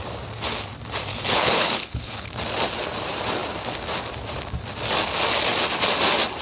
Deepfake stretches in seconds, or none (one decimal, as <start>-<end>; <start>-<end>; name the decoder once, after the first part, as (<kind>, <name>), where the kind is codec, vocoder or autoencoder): 1.1-2.3 (codec, HILCodec)